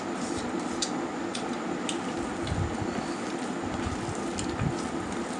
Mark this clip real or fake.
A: real